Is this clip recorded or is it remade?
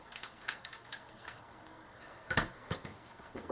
remade